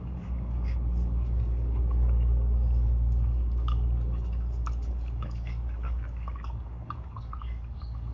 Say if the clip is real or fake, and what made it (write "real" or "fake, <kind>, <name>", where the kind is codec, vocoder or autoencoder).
fake, codec, DAC